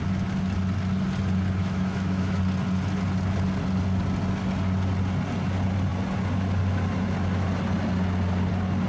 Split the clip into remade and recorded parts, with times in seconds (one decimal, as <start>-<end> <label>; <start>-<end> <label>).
0.0-1.6 recorded; 1.6-2.4 remade; 2.4-8.9 recorded